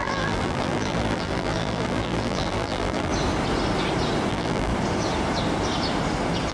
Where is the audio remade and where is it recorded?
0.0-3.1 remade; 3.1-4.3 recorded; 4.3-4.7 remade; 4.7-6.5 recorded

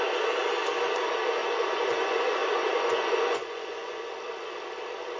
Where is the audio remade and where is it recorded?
0.0-1.4 recorded; 1.4-4.1 remade; 4.1-5.2 recorded

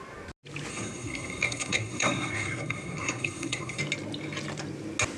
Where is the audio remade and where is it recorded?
0.0-0.7 recorded; 0.7-3.8 remade; 3.8-5.2 recorded

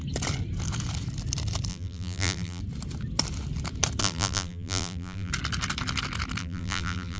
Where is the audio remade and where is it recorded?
0.0-1.7 recorded; 1.7-2.6 remade; 2.6-4.0 recorded; 4.0-5.3 remade; 5.3-6.4 recorded; 6.4-7.2 remade

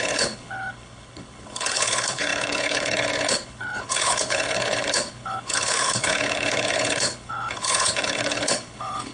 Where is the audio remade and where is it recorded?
0.0-9.1 remade

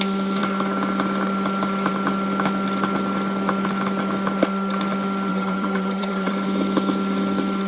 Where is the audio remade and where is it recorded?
0.0-5.3 recorded; 5.3-6.3 remade; 6.3-7.7 recorded